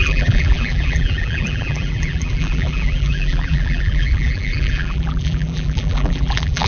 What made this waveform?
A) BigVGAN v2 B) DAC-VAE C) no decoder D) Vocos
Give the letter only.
A